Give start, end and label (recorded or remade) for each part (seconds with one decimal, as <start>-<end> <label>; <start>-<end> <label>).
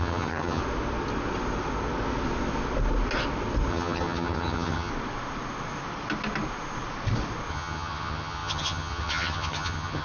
0.0-0.6 remade; 0.6-3.7 recorded; 3.7-4.9 remade; 4.9-7.5 recorded; 7.5-10.0 remade